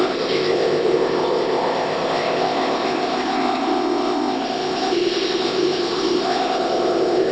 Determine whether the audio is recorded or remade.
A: remade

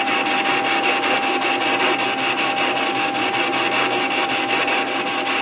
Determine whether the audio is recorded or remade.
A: recorded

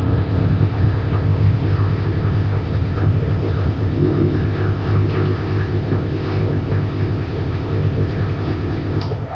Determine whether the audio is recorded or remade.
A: remade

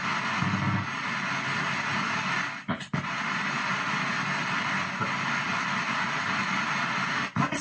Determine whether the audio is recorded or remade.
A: recorded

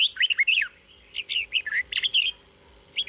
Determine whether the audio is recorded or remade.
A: recorded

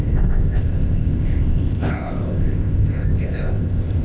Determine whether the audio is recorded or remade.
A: remade